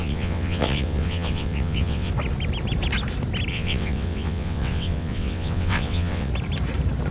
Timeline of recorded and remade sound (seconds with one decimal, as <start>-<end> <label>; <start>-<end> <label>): 0.0-2.1 remade; 2.1-3.5 recorded; 3.5-6.3 remade; 6.3-7.1 recorded